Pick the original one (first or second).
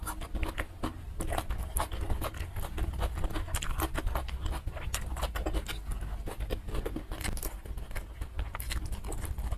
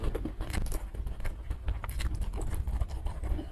first